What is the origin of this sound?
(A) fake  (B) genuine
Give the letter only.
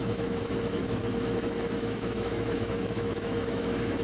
A